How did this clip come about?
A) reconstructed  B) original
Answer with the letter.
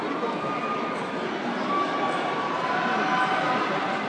B